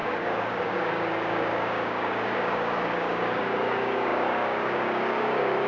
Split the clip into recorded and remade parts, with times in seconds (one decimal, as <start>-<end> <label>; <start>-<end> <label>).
0.0-5.7 remade